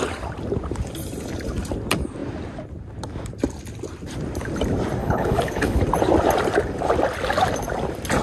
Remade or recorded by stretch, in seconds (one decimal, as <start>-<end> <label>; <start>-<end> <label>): 0.0-5.0 recorded; 5.0-5.8 remade; 5.8-8.2 recorded